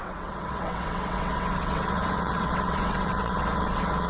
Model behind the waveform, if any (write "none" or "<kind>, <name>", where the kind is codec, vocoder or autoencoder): vocoder, WaveNeXt